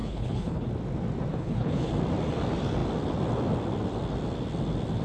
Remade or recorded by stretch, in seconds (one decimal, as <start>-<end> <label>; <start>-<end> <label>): 0.0-0.7 remade; 0.7-1.3 recorded; 1.3-1.9 remade; 1.9-5.0 recorded

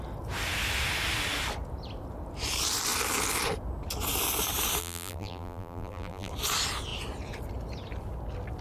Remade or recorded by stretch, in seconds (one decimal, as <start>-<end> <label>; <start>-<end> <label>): 0.0-4.8 recorded; 4.8-6.3 remade; 6.3-8.6 recorded

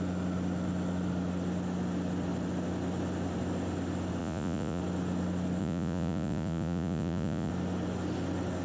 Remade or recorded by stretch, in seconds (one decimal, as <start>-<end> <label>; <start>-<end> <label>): 0.0-4.2 recorded; 4.2-4.8 remade; 4.8-5.6 recorded; 5.6-7.5 remade; 7.5-8.6 recorded

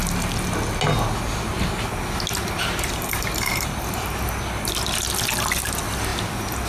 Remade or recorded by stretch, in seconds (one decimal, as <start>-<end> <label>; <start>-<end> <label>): 0.0-2.4 recorded; 2.4-4.3 remade; 4.3-6.7 recorded

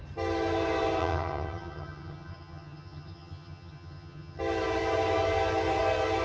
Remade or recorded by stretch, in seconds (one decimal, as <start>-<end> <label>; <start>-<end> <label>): 0.0-1.0 recorded; 1.0-4.4 remade; 4.4-6.2 recorded